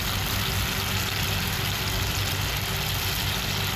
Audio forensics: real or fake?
real